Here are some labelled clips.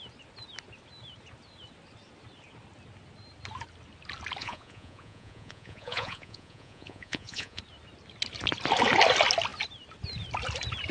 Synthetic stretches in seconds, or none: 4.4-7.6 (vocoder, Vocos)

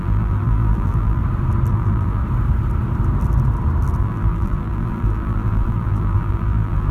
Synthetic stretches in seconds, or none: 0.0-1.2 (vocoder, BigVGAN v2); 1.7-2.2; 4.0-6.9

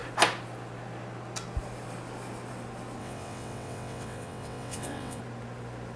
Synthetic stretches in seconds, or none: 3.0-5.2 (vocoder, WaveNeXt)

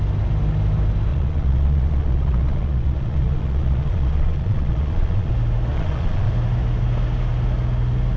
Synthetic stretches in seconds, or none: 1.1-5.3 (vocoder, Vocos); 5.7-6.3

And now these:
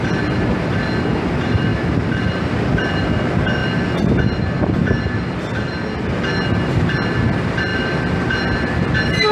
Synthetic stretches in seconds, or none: 0.0-1.7 (vocoder, BigVGAN v2); 2.4-3.6; 6.6-7.7; 8.4-9.3

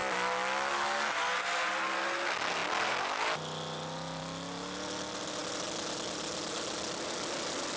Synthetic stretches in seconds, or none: none

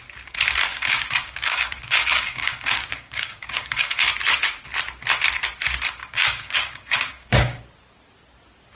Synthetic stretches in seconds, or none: 0.7-4.1 (codec, DAC); 6.0-7.6

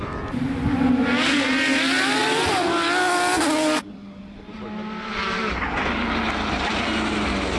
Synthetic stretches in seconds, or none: none